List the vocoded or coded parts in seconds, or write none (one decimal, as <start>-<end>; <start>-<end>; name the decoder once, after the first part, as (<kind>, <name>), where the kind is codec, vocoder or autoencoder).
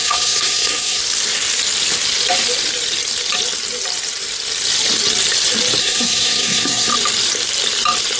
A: 0.0-1.0 (codec, SNAC); 5.8-6.9